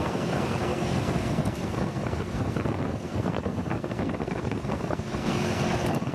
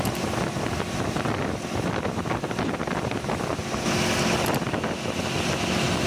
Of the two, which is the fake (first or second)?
first